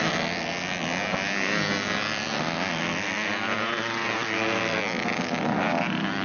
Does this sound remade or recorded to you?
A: recorded